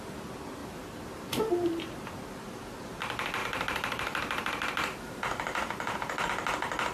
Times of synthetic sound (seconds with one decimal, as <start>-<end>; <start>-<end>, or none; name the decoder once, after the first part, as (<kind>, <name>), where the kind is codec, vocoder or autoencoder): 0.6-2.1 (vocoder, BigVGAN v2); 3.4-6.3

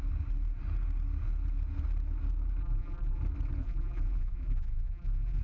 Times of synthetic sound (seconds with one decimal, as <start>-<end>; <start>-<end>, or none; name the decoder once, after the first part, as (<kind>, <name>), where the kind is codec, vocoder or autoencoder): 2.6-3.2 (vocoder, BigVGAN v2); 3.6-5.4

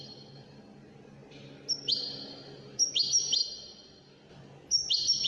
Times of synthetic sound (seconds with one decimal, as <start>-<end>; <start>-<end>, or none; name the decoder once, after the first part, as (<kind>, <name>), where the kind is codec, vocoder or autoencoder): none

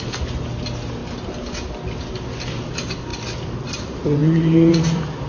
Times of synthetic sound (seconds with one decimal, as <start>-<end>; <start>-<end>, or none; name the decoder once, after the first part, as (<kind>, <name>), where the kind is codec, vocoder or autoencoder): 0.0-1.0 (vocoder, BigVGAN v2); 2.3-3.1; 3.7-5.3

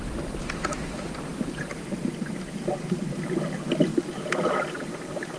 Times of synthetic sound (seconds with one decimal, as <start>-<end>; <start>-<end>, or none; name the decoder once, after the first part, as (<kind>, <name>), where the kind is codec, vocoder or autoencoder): none

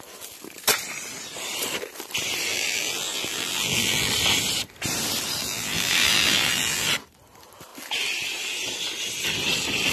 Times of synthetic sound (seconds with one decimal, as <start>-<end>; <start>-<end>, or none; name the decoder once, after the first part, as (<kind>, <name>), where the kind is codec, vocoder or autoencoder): 2.5-4.1 (vocoder, BigVGAN v2); 5.4-6.9

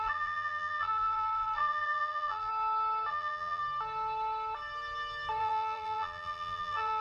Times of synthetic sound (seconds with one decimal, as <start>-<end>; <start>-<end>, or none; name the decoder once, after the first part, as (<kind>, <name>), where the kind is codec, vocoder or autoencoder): 0.0-2.5 (vocoder, BigVGAN v2); 3.1-3.6; 5.4-7.0

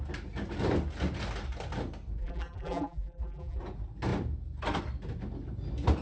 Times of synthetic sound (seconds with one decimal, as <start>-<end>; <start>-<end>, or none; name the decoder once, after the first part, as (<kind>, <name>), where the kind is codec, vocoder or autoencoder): 2.2-3.6 (vocoder, BigVGAN v2)